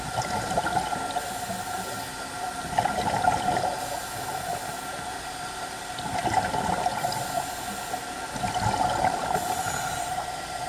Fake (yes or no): no